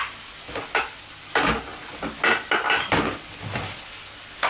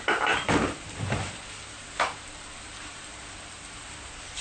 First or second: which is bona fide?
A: first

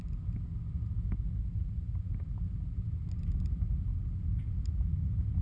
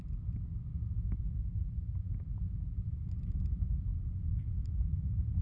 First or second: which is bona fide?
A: first